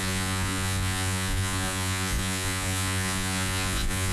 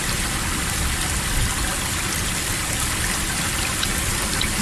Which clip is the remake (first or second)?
first